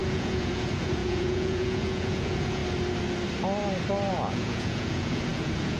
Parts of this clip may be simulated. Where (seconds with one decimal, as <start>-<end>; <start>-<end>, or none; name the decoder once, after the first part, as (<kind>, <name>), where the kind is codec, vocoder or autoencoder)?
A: 0.0-2.6 (vocoder, Vocos); 4.1-5.8